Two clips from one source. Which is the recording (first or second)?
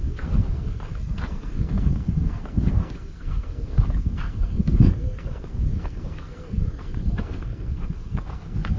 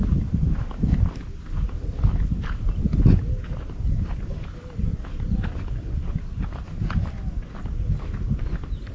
second